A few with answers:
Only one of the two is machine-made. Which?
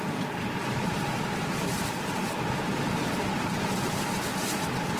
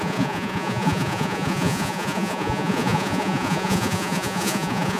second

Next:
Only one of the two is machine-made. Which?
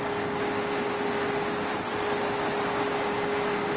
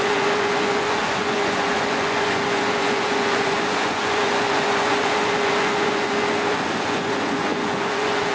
second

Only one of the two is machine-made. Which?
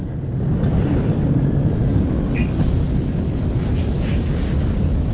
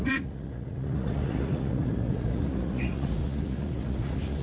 second